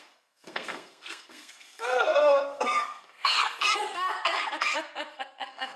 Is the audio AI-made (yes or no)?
yes